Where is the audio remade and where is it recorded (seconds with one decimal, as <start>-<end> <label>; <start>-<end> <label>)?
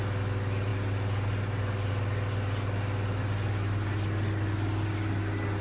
0.0-5.6 recorded